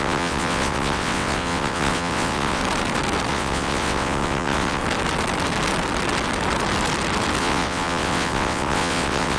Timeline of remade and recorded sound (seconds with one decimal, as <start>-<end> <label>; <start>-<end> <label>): 0.0-2.6 remade; 2.6-3.3 recorded; 3.3-4.8 remade; 4.8-7.4 recorded; 7.4-9.4 remade